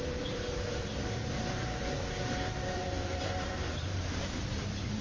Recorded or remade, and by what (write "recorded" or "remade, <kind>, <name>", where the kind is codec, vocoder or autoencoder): remade, vocoder, BigVGAN v2